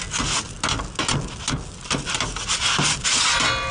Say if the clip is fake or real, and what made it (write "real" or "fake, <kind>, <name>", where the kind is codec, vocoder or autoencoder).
real